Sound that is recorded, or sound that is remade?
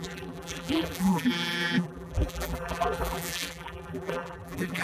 remade